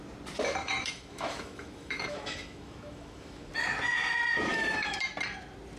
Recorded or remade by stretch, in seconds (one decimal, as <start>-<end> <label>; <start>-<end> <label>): 0.0-0.6 recorded; 0.6-3.5 remade; 3.5-4.5 recorded; 4.5-5.1 remade; 5.1-5.8 recorded